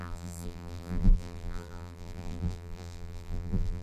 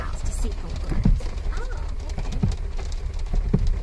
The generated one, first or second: first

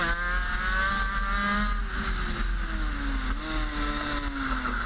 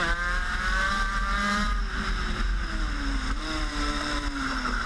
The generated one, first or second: second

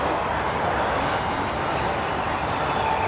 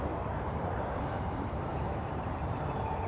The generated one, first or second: second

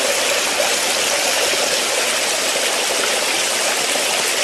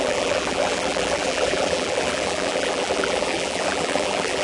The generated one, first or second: second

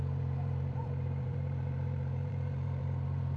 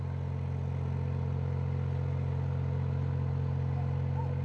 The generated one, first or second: first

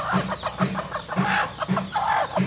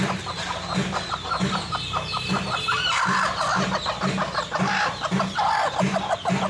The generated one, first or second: second